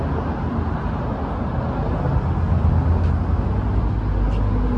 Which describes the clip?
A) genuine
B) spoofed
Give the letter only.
A